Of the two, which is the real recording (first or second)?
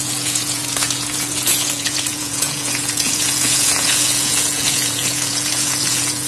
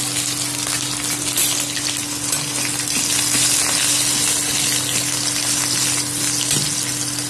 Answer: second